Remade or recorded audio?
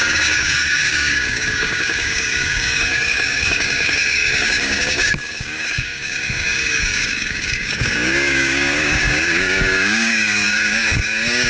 remade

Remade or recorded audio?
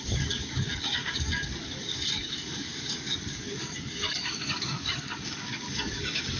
remade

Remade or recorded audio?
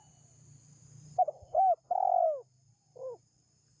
recorded